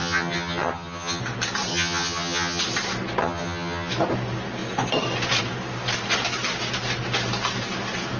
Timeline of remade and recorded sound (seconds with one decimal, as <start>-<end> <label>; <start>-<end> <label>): 0.0-1.2 remade; 1.2-1.7 recorded; 1.7-2.6 remade; 2.6-3.2 recorded; 3.2-3.9 remade; 3.9-8.2 recorded